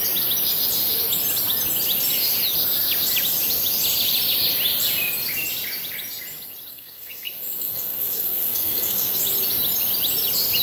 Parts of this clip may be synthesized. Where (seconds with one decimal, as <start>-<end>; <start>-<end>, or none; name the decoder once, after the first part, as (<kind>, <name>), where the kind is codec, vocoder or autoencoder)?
6.7-9.2 (codec, SNAC)